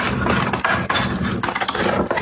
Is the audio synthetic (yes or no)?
no